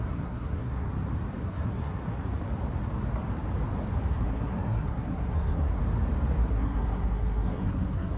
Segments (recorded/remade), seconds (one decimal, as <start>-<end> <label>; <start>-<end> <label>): 0.0-0.9 remade; 0.9-1.4 recorded; 1.4-2.0 remade; 2.0-4.1 recorded; 4.1-5.8 remade; 5.8-6.5 recorded; 6.5-8.2 remade